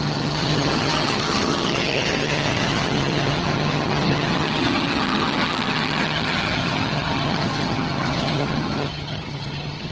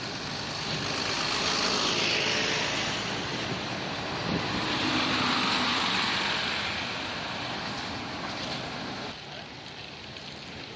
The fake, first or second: first